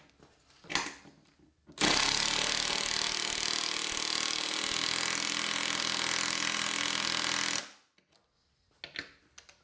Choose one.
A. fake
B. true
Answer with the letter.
B